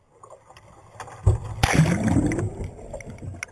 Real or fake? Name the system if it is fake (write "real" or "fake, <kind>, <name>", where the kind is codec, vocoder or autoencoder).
real